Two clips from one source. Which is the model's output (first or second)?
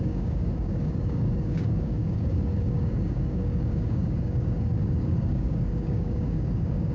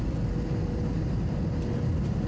first